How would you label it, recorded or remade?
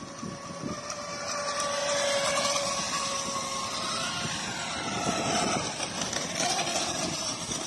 recorded